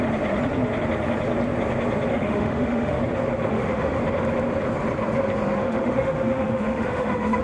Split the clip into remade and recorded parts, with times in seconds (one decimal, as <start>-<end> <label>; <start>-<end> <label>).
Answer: 0.0-2.1 recorded; 2.1-3.0 remade; 3.0-3.5 recorded; 3.5-4.0 remade; 4.0-5.6 recorded; 5.6-7.4 remade